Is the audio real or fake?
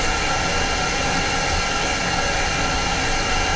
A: real